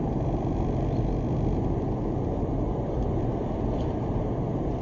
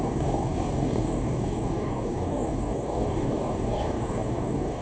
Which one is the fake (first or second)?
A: second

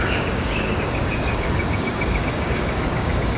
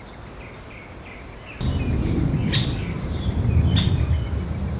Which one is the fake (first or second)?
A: first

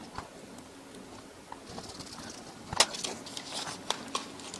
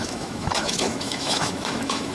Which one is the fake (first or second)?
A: second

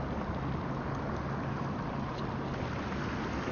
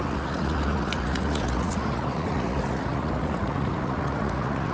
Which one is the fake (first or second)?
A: second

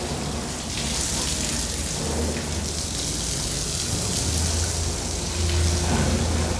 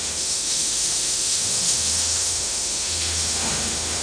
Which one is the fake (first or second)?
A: second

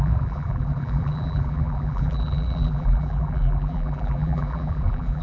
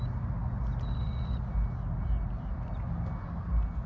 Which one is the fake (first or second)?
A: first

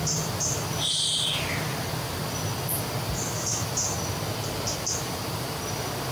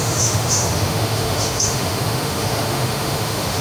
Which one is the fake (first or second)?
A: second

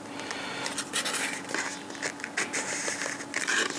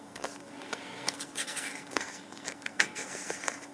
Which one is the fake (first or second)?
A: second